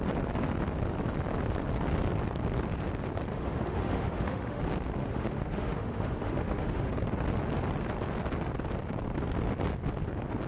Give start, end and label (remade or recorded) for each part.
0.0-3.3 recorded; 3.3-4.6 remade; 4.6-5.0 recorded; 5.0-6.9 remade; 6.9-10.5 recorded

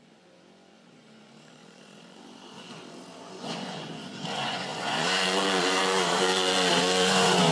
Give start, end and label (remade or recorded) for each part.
0.0-7.5 remade

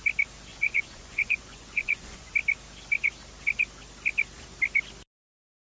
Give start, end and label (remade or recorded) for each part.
0.0-0.5 recorded; 0.5-2.3 remade; 2.3-5.7 recorded

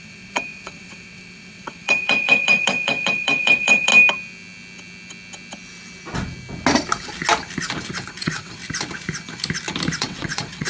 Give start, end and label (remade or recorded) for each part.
0.0-3.9 remade; 3.9-7.9 recorded; 7.9-8.6 remade; 8.6-10.0 recorded; 10.0-10.7 remade

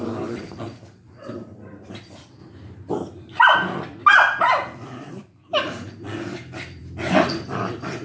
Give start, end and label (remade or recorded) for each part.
0.0-2.4 remade; 2.4-3.4 recorded; 3.4-6.8 remade; 6.8-7.6 recorded; 7.6-8.0 remade

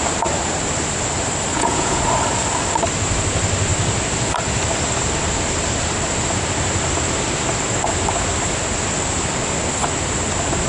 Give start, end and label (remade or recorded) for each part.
0.0-1.5 recorded; 1.5-2.0 remade; 2.0-10.7 recorded